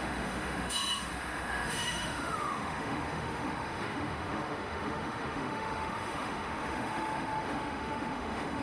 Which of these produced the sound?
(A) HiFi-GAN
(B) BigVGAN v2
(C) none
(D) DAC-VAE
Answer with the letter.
D